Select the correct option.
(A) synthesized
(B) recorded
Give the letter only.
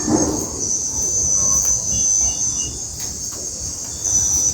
B